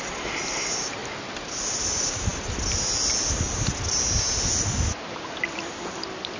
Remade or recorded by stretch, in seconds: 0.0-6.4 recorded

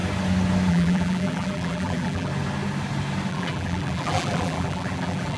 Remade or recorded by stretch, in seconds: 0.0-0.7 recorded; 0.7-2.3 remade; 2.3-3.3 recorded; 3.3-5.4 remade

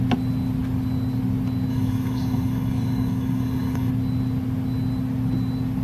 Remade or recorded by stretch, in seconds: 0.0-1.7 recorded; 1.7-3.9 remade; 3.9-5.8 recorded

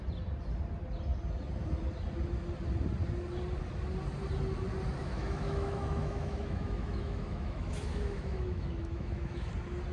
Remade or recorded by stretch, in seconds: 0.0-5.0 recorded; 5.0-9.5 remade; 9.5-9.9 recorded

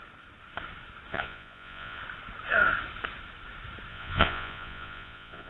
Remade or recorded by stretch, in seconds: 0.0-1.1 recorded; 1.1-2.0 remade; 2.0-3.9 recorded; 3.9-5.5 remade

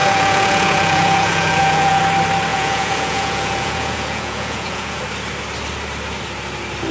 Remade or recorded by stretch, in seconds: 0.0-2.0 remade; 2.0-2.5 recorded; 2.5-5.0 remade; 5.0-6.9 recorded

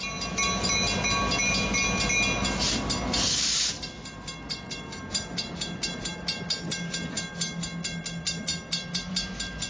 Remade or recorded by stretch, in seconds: 0.0-9.7 recorded

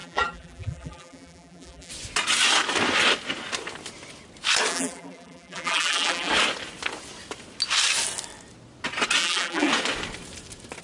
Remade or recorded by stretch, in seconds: 0.0-1.9 remade; 1.9-4.7 recorded; 4.7-6.3 remade; 6.3-9.2 recorded; 9.2-9.7 remade; 9.7-10.8 recorded